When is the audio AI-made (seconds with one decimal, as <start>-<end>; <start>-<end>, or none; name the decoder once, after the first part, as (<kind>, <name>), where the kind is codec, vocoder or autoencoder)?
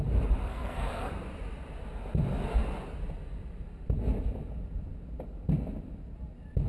0.4-1.1 (codec, SNAC)